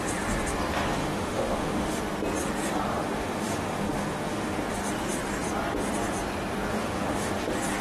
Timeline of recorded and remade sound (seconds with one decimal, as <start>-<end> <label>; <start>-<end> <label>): 0.0-1.0 recorded; 1.0-2.0 remade; 2.0-2.9 recorded; 2.9-4.6 remade; 4.6-6.7 recorded; 6.7-7.3 remade; 7.3-7.8 recorded